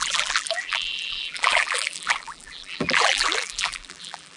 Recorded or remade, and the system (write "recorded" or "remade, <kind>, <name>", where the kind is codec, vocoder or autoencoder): remade, vocoder, BigVGAN v2